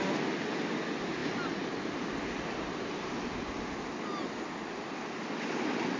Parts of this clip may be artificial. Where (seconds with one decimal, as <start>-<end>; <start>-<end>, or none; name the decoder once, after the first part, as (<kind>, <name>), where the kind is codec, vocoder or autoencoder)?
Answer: none